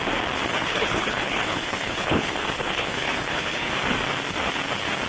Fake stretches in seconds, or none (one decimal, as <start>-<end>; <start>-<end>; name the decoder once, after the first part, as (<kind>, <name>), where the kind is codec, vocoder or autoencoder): 0.6-3.7 (codec, HILCodec)